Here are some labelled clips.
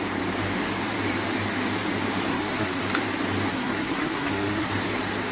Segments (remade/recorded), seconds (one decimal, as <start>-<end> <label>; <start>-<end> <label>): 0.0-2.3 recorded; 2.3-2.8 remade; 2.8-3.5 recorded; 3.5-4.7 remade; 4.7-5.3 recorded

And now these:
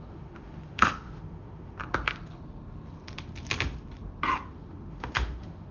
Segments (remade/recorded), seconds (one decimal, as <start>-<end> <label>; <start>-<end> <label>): 0.0-1.8 remade; 1.8-4.5 recorded; 4.5-5.7 remade

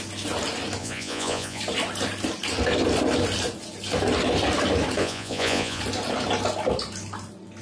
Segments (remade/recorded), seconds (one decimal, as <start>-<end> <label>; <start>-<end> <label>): 0.0-0.8 recorded; 0.8-1.6 remade; 1.6-5.0 recorded; 5.0-5.8 remade; 5.8-7.6 recorded

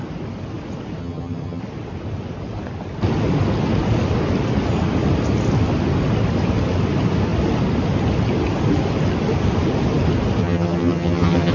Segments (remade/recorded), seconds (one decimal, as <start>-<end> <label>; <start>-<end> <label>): 0.0-1.0 recorded; 1.0-1.6 remade; 1.6-10.4 recorded; 10.4-11.5 remade

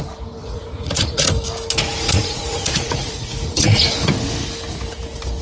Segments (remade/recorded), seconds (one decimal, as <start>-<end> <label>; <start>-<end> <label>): 0.0-0.4 recorded; 0.4-1.3 remade; 1.3-2.0 recorded; 2.0-4.2 remade; 4.2-5.4 recorded

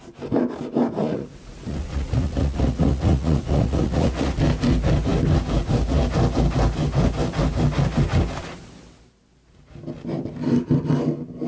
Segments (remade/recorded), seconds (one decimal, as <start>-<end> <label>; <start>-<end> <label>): 0.0-1.0 recorded; 1.0-4.4 remade; 4.4-11.5 recorded

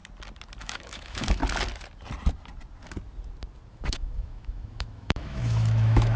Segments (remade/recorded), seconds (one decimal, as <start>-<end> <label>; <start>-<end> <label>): 0.0-0.6 recorded; 0.6-1.4 remade; 1.4-3.7 recorded; 3.7-6.2 remade

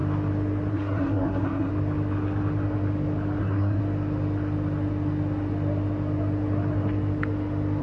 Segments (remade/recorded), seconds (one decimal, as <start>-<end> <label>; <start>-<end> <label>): 0.0-0.7 recorded; 0.7-1.7 remade; 1.7-3.4 recorded; 3.4-3.8 remade; 3.8-7.8 recorded